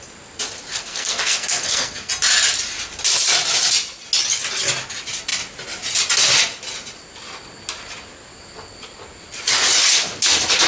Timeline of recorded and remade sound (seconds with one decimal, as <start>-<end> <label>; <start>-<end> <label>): 0.0-0.7 recorded; 0.7-2.1 remade; 2.1-10.7 recorded

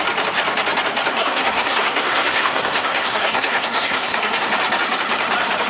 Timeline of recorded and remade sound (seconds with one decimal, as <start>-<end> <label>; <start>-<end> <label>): 0.0-1.1 recorded; 1.1-4.5 remade; 4.5-5.7 recorded

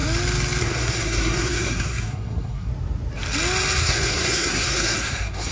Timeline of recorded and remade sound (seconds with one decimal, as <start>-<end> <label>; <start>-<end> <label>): 0.0-0.6 recorded; 0.6-2.7 remade; 2.7-3.8 recorded; 3.8-5.5 remade

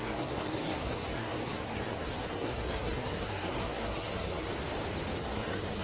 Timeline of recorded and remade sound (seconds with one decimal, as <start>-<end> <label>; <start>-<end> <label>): 0.0-4.5 remade; 4.5-5.2 recorded; 5.2-5.8 remade

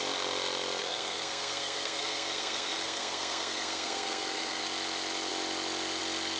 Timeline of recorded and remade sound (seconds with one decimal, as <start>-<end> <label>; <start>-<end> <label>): 0.0-0.8 recorded; 0.8-4.6 remade; 4.6-6.4 recorded

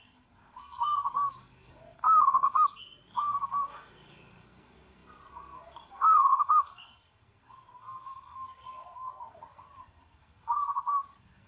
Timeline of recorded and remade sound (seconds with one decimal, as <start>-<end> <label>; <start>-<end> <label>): 0.0-11.5 remade